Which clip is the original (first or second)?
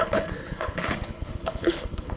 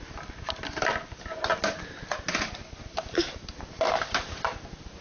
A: second